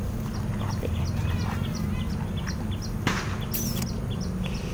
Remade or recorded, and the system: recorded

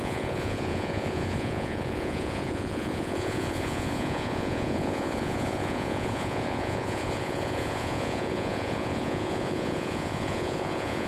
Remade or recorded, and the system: remade, vocoder, Vocos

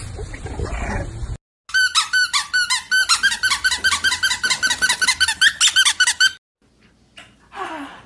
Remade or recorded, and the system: recorded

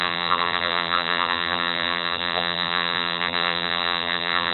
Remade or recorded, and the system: remade, vocoder, BigVGAN v2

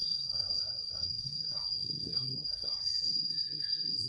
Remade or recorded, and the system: remade, codec, SNAC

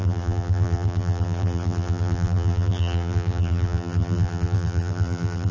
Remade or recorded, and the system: remade, vocoder, BigVGAN v2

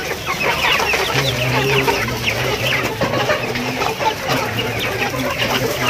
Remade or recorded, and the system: recorded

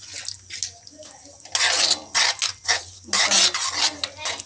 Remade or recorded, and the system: recorded